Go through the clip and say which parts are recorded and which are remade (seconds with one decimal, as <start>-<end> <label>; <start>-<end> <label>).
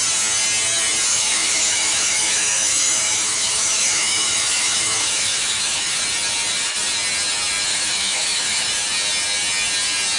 0.0-1.1 recorded; 1.1-6.0 remade; 6.0-7.7 recorded; 7.7-8.7 remade; 8.7-10.2 recorded